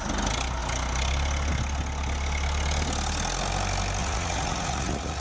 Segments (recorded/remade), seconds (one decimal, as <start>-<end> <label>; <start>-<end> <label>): 0.0-4.0 recorded; 4.0-5.2 remade